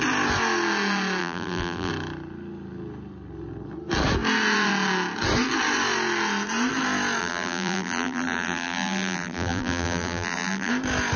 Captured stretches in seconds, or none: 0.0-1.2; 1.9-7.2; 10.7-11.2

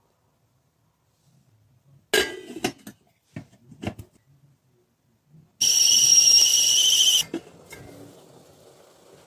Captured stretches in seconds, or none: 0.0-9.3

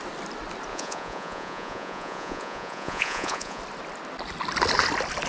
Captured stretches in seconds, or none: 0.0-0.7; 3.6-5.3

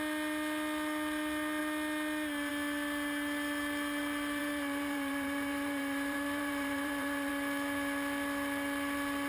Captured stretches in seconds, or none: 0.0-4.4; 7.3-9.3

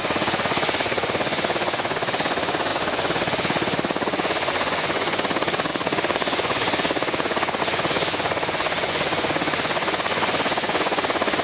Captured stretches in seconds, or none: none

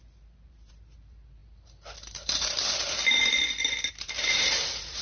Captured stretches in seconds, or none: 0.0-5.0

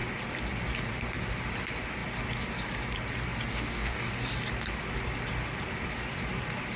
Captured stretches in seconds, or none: 0.0-3.5; 4.1-6.8

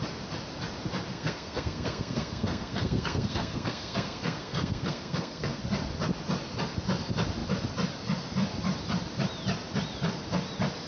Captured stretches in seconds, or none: 0.0-1.1; 5.6-10.9